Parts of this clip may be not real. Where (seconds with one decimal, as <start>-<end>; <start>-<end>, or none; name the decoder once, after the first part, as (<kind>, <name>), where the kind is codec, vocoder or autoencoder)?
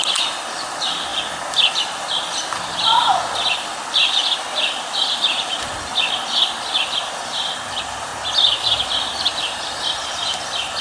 0.0-8.1 (vocoder, BigVGAN v2); 8.8-10.8